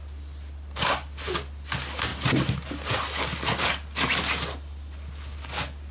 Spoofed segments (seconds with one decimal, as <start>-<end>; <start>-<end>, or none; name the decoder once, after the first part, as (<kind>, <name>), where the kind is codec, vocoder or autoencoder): none